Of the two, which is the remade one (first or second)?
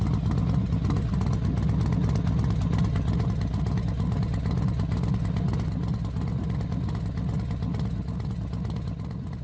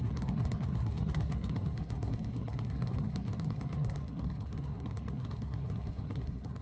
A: second